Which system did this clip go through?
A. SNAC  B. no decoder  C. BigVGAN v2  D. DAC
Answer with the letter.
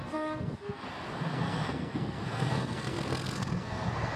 A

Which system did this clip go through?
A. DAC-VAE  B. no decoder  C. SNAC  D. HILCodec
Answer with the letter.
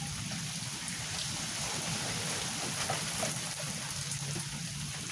B